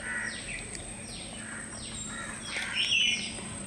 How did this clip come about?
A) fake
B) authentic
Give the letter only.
B